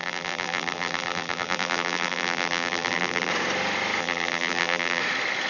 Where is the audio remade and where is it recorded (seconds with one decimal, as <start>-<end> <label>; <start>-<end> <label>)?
0.0-3.3 remade; 3.3-4.0 recorded; 4.0-5.0 remade; 5.0-5.5 recorded